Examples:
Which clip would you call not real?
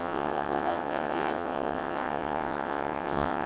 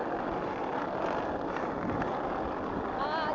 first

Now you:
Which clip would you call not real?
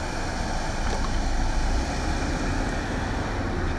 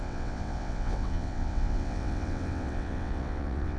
second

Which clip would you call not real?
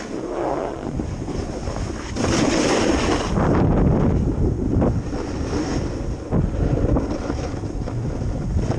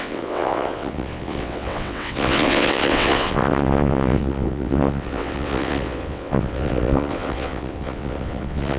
second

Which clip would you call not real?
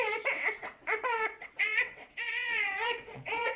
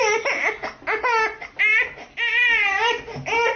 first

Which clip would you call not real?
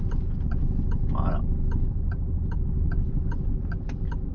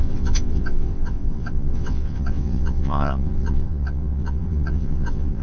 second